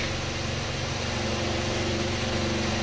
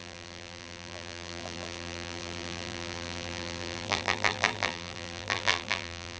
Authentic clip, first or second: first